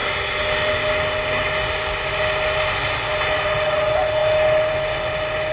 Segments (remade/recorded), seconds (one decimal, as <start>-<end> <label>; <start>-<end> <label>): 0.0-5.5 recorded